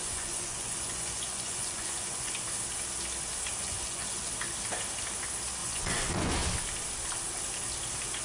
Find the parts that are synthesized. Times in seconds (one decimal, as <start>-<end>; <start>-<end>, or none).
0.0-2.4; 3.6-4.3; 5.6-6.3